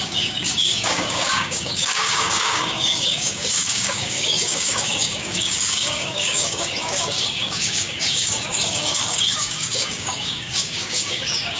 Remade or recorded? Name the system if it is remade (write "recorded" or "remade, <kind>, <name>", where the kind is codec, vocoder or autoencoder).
remade, codec, DAC